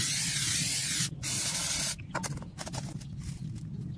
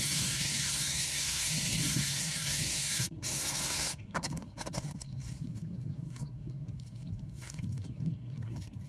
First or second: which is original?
first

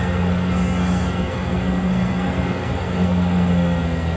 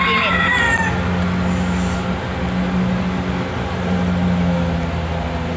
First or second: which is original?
second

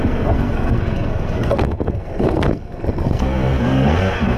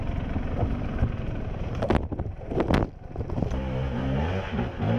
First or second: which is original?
second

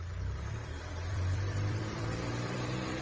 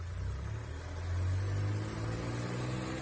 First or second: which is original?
second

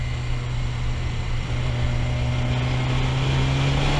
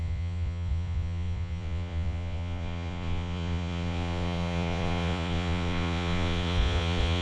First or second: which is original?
first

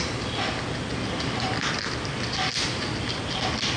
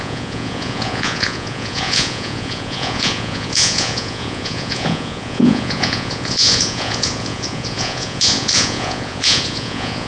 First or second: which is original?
first